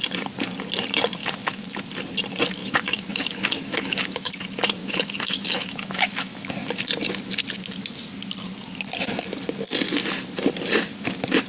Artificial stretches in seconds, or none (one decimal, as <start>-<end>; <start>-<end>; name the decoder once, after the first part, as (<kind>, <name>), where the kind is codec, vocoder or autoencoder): 1.2-1.8 (autoencoder, DAC-VAE); 2.6-4.3; 4.8-6.5